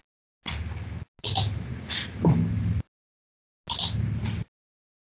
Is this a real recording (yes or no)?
yes